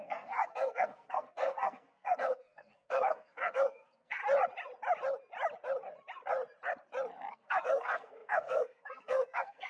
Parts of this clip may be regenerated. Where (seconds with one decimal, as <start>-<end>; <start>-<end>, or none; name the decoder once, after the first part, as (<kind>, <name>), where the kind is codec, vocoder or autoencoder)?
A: 0.0-4.2 (codec, SNAC); 7.3-9.7

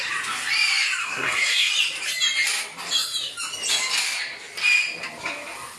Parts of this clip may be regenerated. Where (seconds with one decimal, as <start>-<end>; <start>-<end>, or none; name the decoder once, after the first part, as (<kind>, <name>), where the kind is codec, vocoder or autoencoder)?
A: 1.0-1.7 (codec, SNAC)

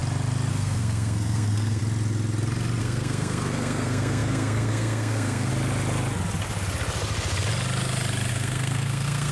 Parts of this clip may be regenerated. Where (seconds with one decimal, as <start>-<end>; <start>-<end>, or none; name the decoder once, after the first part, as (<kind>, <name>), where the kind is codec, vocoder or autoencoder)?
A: 0.5-1.8 (codec, SNAC); 2.8-5.5; 8.3-9.3